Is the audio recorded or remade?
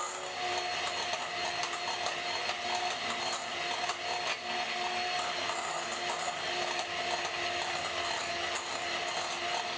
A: recorded